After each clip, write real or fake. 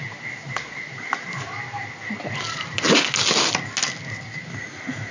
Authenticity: real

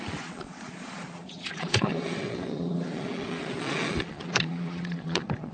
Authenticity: fake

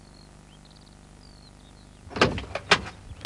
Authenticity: real